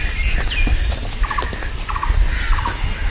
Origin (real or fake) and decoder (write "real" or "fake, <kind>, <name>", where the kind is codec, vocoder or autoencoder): real